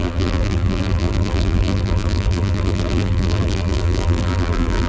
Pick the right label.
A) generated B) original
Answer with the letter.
A